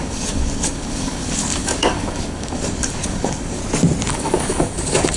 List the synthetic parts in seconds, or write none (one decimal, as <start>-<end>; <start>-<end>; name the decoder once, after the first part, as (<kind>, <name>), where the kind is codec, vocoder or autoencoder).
0.0-3.6 (codec, DAC); 4.1-5.2